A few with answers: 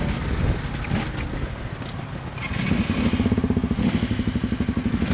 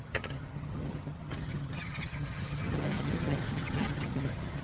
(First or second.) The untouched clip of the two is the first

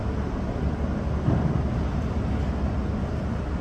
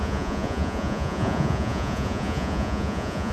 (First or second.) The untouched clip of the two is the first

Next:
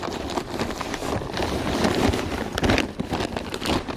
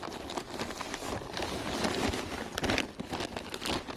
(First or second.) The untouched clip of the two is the second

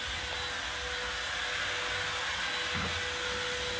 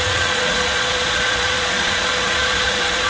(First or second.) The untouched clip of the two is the first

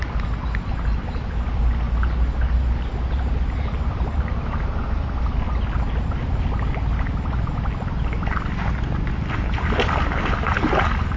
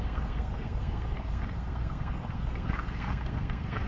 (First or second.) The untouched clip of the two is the first